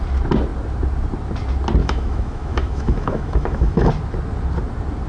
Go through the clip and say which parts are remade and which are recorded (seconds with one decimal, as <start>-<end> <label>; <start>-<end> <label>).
0.0-1.8 recorded; 1.8-3.9 remade; 3.9-5.1 recorded